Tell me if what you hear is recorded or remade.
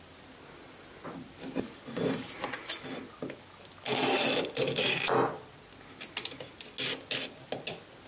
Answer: recorded